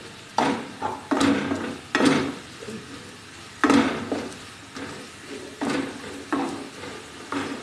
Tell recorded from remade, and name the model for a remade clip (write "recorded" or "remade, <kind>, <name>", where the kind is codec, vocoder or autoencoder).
recorded